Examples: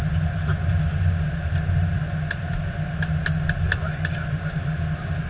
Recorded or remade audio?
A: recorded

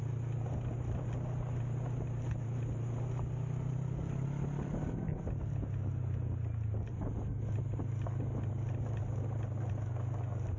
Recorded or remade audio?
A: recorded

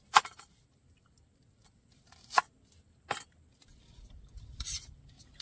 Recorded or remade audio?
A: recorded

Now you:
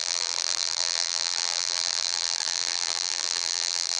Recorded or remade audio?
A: remade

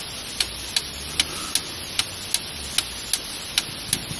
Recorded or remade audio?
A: recorded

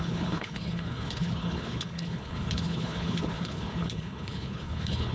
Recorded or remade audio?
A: remade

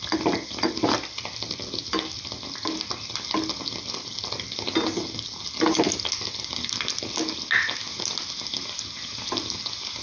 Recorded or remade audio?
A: recorded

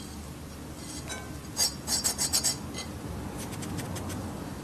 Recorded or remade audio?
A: recorded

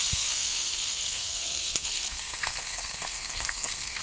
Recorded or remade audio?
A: remade